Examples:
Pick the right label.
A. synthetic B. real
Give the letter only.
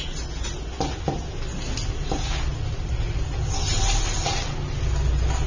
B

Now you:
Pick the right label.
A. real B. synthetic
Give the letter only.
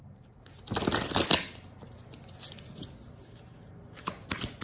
A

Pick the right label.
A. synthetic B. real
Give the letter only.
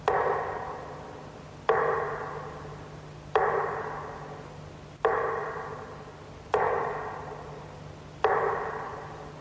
B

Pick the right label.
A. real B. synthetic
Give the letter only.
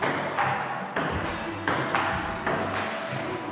A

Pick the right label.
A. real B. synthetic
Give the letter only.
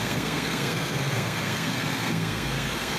B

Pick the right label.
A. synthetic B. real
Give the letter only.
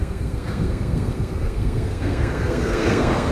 A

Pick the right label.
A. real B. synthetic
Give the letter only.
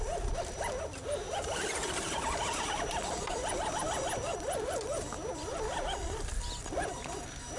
A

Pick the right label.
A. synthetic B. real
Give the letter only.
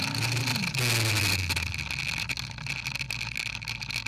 B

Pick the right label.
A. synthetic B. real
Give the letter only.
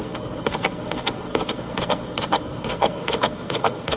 A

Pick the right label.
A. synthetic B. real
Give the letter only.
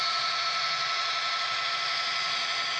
B